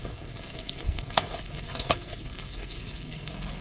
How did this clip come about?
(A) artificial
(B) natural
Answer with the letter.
A